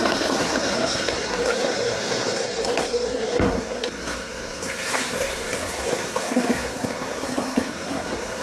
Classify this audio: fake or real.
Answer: fake